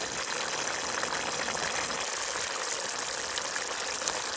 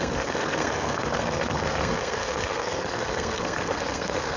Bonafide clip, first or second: first